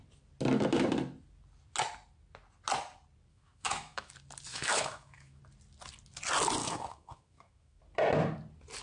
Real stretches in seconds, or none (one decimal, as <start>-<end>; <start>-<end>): 0.0-3.3; 4.1-4.5; 5.4-6.6; 7.8-8.8

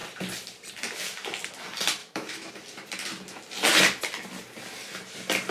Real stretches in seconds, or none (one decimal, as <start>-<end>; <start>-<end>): 0.0-2.0; 2.5-5.5

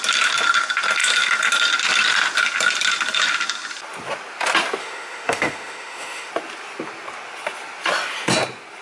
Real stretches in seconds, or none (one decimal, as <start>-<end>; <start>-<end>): 0.0-4.8; 6.3-8.8

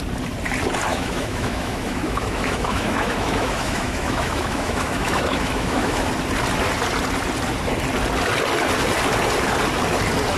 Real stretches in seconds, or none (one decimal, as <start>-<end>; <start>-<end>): 0.0-0.9; 6.1-10.4

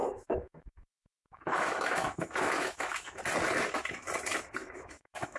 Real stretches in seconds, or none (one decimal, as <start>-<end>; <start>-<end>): 3.2-4.6

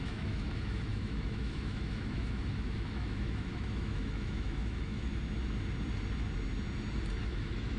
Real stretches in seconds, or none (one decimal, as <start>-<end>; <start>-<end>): 5.1-7.2

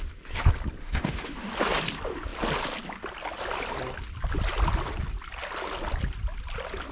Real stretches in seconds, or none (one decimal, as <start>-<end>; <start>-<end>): 0.0-0.8; 1.5-6.9

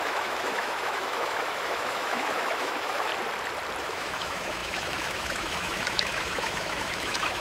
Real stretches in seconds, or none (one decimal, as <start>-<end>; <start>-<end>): 3.1-3.8